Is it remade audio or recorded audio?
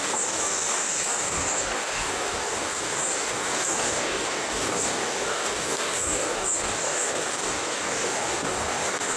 remade